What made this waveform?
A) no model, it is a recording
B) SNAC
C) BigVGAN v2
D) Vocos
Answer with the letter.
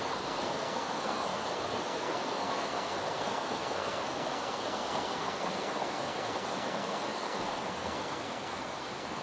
B